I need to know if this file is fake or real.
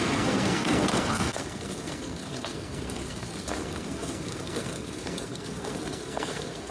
fake